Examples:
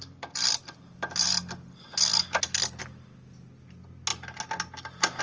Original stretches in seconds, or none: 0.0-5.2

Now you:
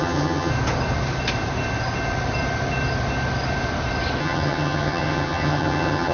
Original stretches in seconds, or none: 0.5-4.2